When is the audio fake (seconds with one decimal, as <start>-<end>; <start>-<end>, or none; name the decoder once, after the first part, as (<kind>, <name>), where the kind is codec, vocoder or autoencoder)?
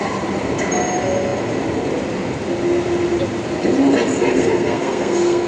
4.3-5.5 (codec, SNAC)